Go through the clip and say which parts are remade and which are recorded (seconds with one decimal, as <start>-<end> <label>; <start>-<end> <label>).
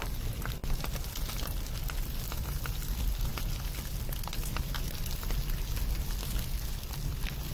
0.0-7.5 recorded